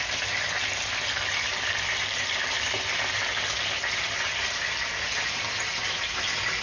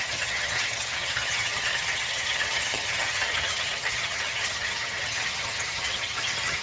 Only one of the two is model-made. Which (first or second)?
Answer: second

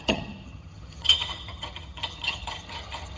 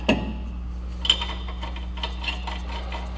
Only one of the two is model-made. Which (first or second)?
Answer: first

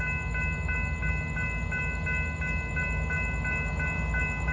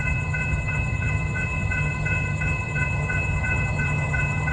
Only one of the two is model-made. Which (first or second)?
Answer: second